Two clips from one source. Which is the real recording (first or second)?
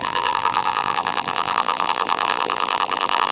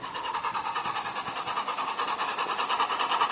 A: second